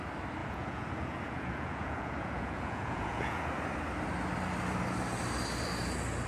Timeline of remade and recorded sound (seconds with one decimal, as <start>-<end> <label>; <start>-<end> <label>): 0.0-0.4 recorded; 0.4-3.4 remade; 3.4-6.3 recorded